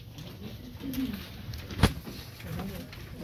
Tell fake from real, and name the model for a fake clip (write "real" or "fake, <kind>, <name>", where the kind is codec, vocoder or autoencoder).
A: real